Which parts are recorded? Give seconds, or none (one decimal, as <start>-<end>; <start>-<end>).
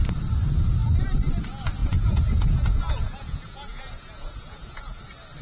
0.0-1.8; 5.0-5.4